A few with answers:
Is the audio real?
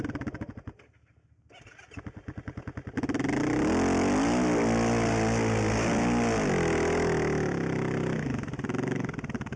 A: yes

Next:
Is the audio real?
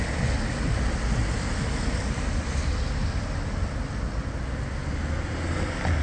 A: yes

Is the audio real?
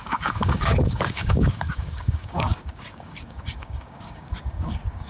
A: no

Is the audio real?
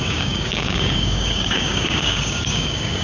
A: no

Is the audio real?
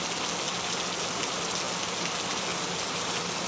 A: yes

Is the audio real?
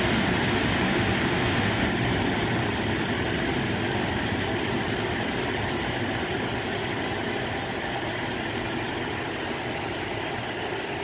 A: yes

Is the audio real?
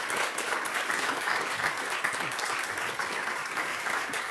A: no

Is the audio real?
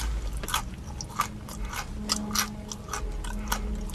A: yes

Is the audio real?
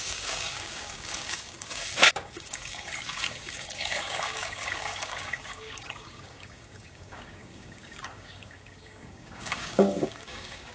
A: no